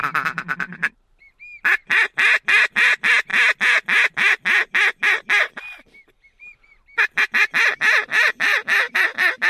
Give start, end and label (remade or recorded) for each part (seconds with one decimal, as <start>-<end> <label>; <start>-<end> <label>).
0.0-0.9 remade; 0.9-8.1 recorded; 8.1-9.1 remade; 9.1-9.5 recorded